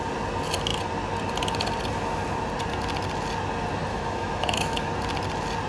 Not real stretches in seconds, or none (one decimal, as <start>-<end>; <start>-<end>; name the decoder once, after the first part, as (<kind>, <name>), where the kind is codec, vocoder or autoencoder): 3.9-4.9 (autoencoder, DAC-VAE)